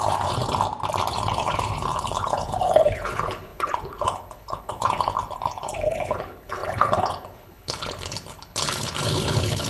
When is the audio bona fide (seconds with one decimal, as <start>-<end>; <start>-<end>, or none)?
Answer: 0.4-1.1